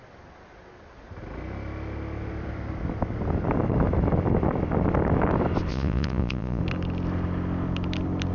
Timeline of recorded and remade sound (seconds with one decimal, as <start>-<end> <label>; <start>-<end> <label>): 0.0-5.7 recorded; 5.7-6.6 remade; 6.6-8.3 recorded

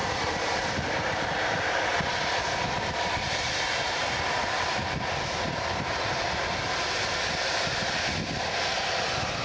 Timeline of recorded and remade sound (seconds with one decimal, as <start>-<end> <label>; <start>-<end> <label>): 0.0-2.4 remade; 2.4-9.4 recorded

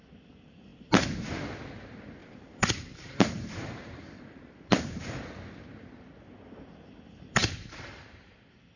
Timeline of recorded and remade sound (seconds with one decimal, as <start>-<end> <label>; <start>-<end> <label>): 0.0-2.2 recorded; 2.2-5.2 remade; 5.2-8.8 recorded

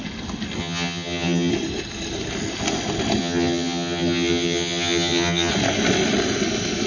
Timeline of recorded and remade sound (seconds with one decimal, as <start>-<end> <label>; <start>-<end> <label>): 0.0-0.6 recorded; 0.6-1.5 remade; 1.5-3.2 recorded; 3.2-5.5 remade; 5.5-6.9 recorded